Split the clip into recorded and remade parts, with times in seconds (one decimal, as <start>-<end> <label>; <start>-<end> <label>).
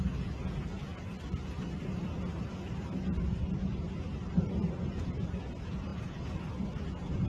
0.0-0.9 recorded; 0.9-3.6 remade; 3.6-5.9 recorded; 5.9-6.8 remade; 6.8-7.3 recorded